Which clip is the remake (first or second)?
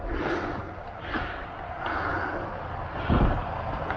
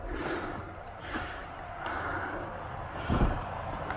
second